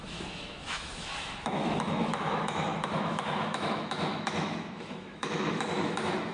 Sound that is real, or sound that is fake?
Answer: fake